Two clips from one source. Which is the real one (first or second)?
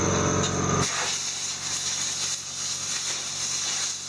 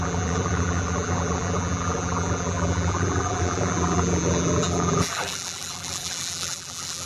first